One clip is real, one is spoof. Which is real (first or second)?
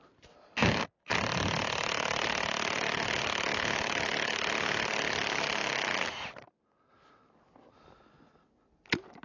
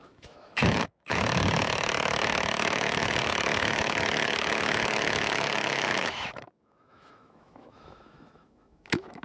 first